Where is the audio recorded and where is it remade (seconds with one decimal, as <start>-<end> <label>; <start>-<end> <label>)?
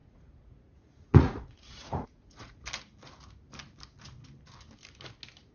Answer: 0.0-2.6 remade; 2.6-5.5 recorded